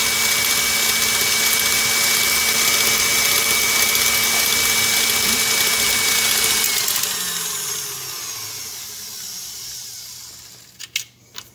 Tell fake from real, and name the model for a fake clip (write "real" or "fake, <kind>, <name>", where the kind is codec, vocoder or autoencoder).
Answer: real